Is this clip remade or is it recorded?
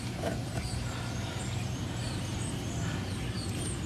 remade